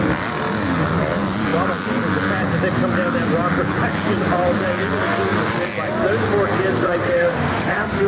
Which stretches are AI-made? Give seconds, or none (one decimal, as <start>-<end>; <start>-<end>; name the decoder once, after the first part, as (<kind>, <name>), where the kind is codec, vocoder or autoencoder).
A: 6.8-8.1 (autoencoder, DAC-VAE)